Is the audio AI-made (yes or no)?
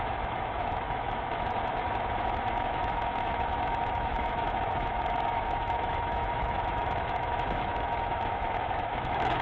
yes